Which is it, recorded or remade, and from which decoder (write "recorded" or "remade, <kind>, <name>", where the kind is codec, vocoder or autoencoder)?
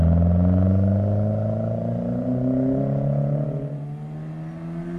recorded